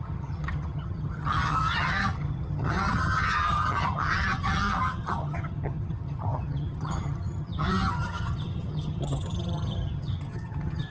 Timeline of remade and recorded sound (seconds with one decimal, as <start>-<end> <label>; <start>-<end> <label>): 0.0-10.9 remade